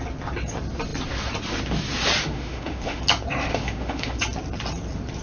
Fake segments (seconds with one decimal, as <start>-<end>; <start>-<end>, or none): 2.2-3.0; 3.5-4.2